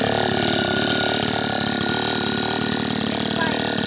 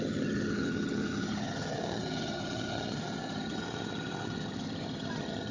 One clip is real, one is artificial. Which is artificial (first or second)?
second